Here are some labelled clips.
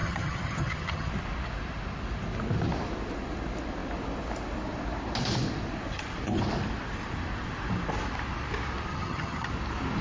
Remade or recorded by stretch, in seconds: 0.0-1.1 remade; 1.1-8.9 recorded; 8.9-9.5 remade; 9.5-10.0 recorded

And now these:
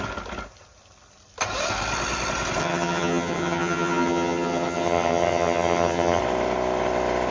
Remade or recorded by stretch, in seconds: 0.0-2.6 recorded; 2.6-6.2 remade; 6.2-7.3 recorded

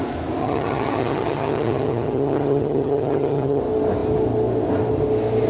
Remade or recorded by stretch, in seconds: 0.0-0.4 recorded; 0.4-3.6 remade; 3.6-5.5 recorded

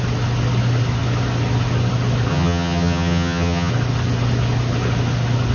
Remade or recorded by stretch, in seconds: 0.0-2.3 recorded; 2.3-3.7 remade; 3.7-5.5 recorded